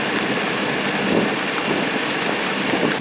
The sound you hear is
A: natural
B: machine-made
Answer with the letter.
A